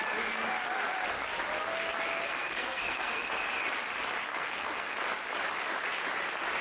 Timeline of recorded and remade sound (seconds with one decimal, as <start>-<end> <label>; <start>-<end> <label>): 0.0-2.1 recorded; 2.1-3.3 remade; 3.3-4.3 recorded; 4.3-4.9 remade; 4.9-6.6 recorded